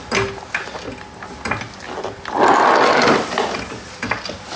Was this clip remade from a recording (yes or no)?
no